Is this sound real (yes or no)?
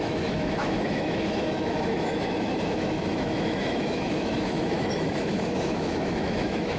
no